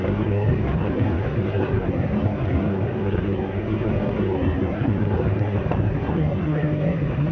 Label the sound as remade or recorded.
remade